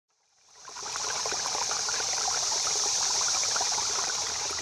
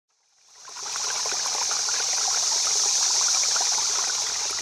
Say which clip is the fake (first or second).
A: first